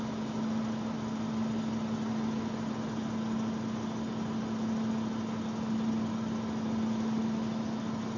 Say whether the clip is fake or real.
real